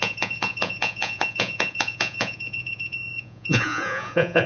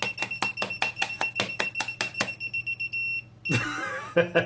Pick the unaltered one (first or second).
second